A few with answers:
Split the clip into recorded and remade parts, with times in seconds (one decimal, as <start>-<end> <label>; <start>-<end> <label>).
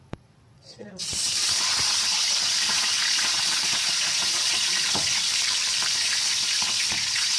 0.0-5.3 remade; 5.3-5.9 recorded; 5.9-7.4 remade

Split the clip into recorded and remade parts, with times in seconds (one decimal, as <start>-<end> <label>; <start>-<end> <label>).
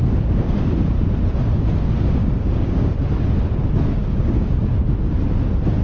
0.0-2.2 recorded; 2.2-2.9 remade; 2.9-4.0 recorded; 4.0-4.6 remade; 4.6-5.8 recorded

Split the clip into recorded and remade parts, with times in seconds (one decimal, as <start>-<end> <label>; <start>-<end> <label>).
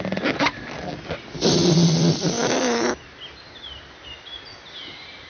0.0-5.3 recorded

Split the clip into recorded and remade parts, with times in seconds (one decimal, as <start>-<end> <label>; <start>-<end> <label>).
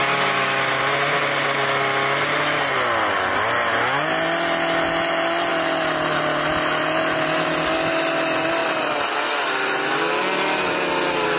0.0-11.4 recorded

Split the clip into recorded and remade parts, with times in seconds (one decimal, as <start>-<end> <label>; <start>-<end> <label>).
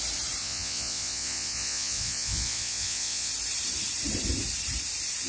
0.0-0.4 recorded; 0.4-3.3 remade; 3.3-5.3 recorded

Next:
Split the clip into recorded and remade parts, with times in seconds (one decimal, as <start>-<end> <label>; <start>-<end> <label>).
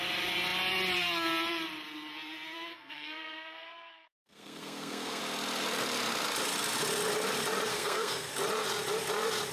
0.0-2.7 recorded; 2.7-5.2 remade; 5.2-7.7 recorded; 7.7-8.3 remade; 8.3-9.5 recorded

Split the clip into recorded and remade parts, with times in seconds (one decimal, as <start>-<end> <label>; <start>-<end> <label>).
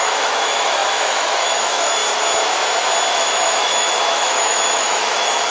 0.0-2.0 remade; 2.0-3.1 recorded; 3.1-5.5 remade